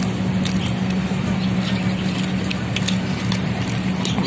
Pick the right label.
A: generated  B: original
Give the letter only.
B